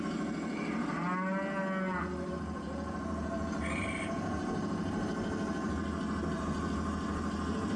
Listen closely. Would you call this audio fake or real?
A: real